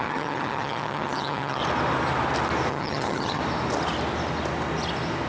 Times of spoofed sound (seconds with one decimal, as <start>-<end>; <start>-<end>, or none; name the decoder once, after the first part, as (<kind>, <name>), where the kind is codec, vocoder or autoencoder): 0.0-1.6 (vocoder, HiFi-GAN); 2.7-3.4